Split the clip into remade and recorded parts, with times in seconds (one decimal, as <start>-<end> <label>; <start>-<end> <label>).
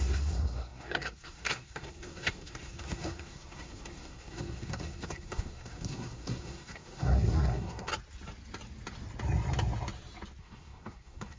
0.0-7.9 remade; 7.9-10.4 recorded; 10.4-11.4 remade